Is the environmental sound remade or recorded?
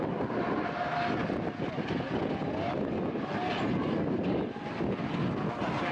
recorded